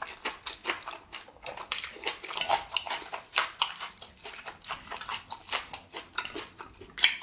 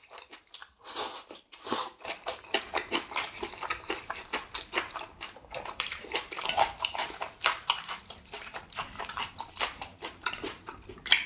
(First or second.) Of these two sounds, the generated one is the second